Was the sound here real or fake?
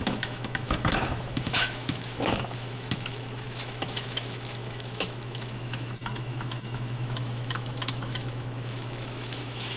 fake